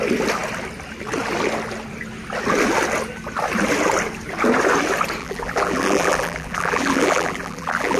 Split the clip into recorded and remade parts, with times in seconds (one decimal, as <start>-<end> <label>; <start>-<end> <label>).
0.0-5.2 recorded; 5.2-8.0 remade